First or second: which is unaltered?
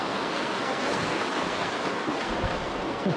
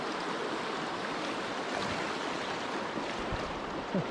second